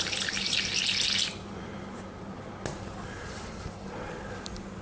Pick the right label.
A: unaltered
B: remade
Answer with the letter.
A